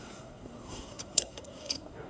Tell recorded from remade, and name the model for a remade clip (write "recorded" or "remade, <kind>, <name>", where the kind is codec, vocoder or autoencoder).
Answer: remade, codec, SNAC